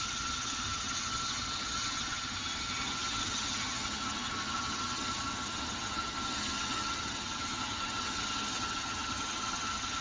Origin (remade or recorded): remade